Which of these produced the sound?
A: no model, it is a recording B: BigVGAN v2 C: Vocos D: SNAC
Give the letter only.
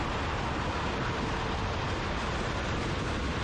A